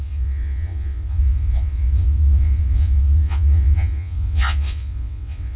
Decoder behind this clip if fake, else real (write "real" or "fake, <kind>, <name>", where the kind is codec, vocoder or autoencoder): fake, vocoder, WaveNeXt